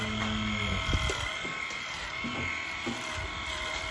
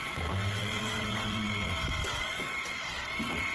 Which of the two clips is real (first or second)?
first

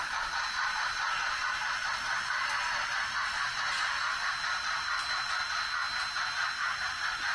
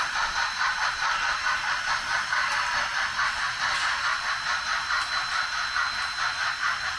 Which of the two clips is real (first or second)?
first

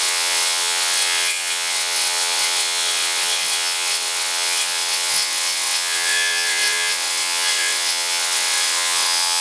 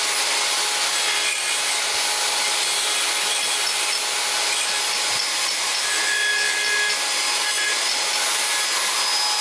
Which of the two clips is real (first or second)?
second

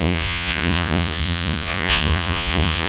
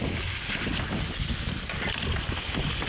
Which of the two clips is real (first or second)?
second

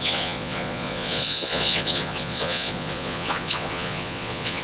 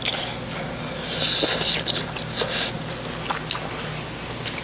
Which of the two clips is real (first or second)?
second